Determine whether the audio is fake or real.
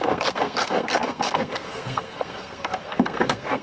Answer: fake